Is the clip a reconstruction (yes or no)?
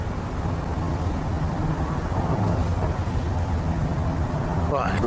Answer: no